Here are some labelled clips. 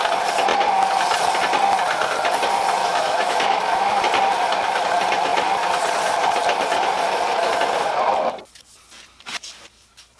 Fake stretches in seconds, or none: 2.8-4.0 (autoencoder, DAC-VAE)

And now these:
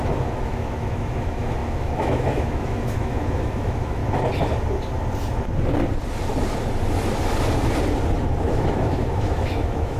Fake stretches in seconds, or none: 0.0-4.0 (autoencoder, DAC-VAE); 8.4-10.0

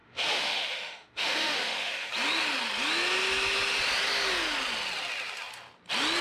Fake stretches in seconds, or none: 0.0-2.1 (autoencoder, DAC-VAE)

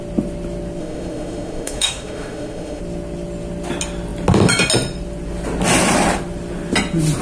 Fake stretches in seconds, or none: 0.8-2.8 (autoencoder, DAC-VAE)

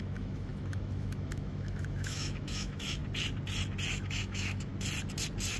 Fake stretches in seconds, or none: 0.0-3.0 (autoencoder, DAC-VAE); 3.9-4.7

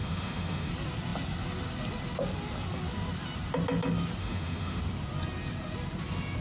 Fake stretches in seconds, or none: 0.0-0.7 (autoencoder, DAC-VAE); 4.2-4.8

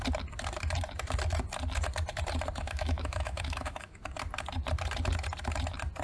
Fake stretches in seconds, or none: 2.6-4.0 (autoencoder, DAC-VAE)

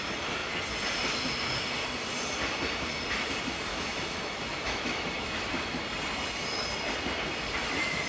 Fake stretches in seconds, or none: 3.7-5.8 (autoencoder, DAC-VAE)